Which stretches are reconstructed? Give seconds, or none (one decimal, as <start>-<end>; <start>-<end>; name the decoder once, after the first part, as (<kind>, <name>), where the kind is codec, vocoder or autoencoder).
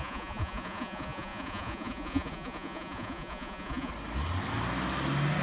0.0-3.9 (vocoder, Vocos)